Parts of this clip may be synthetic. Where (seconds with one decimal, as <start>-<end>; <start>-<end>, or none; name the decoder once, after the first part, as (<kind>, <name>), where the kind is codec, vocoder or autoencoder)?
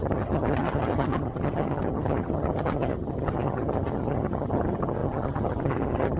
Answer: 0.0-6.2 (vocoder, HiFi-GAN)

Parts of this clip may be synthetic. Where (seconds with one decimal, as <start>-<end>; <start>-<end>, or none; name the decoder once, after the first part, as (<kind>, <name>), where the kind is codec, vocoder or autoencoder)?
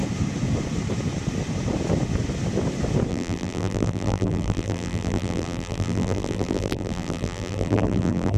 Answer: 3.1-8.4 (vocoder, BigVGAN v2)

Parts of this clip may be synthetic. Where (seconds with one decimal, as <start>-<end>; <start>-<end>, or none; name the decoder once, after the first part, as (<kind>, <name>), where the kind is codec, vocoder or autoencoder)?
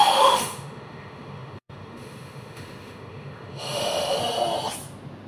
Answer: 0.0-4.2 (autoencoder, DAC-VAE)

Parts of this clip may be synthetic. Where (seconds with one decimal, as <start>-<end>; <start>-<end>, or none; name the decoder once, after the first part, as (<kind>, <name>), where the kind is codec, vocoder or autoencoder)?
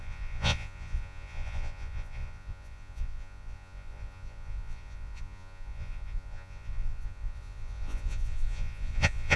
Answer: 0.0-9.4 (vocoder, Vocos)